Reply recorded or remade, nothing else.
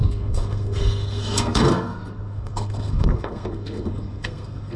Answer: remade